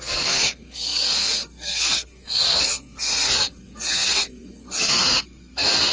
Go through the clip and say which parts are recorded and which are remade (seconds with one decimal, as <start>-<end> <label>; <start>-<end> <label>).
0.0-5.9 remade

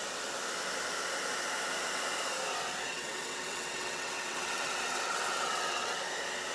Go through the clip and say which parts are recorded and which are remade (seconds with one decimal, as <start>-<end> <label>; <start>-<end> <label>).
0.0-2.9 recorded; 2.9-6.0 remade; 6.0-6.5 recorded

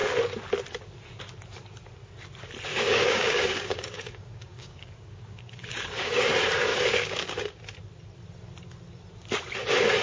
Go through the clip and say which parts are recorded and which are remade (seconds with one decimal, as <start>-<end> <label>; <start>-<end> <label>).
0.0-2.7 recorded; 2.7-6.3 remade; 6.3-6.7 recorded; 6.7-7.6 remade; 7.6-10.0 recorded

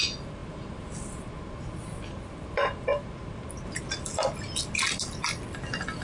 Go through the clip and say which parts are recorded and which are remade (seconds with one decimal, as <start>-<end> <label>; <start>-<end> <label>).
0.0-6.0 recorded

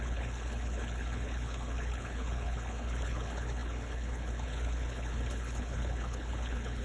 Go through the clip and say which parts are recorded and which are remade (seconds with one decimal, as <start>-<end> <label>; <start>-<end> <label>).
0.0-6.8 remade

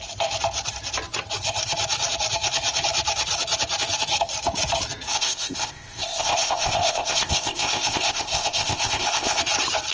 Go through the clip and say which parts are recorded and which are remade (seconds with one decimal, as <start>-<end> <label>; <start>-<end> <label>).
0.0-5.1 recorded; 5.1-9.4 remade; 9.4-9.9 recorded

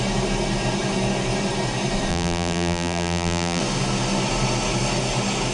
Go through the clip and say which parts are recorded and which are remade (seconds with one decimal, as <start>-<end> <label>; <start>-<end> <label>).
0.0-2.1 recorded; 2.1-3.6 remade; 3.6-5.5 recorded